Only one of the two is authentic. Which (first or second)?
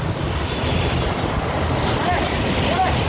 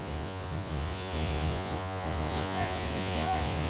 first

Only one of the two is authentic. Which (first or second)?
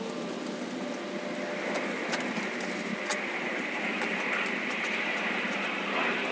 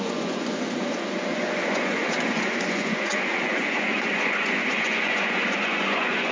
first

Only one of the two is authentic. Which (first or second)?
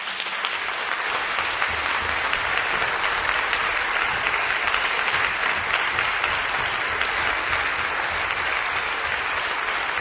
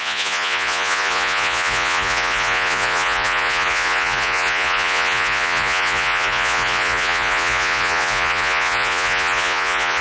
first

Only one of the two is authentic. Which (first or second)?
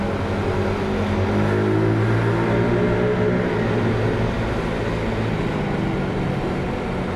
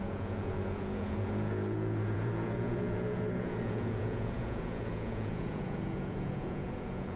first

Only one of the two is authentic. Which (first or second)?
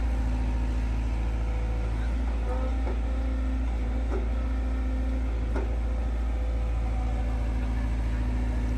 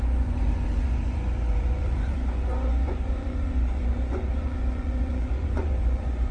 first